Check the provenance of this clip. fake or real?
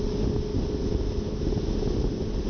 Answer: real